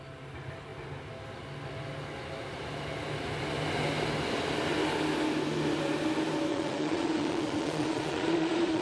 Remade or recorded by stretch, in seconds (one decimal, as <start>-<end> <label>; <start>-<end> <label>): 0.0-6.5 recorded; 6.5-8.8 remade